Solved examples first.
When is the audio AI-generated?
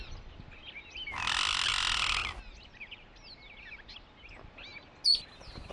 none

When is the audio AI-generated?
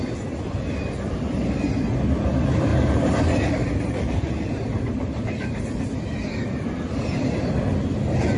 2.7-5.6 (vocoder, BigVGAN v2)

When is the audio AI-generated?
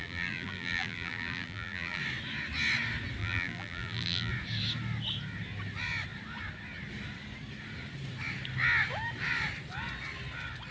0.0-2.0 (vocoder, BigVGAN v2); 3.2-4.3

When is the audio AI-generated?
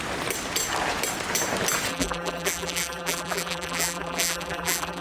1.9-5.0 (vocoder, BigVGAN v2)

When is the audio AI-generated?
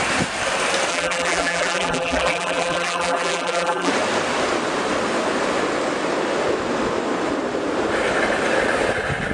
0.9-3.9 (vocoder, BigVGAN v2)